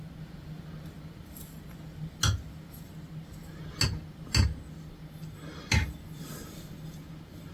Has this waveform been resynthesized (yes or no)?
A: no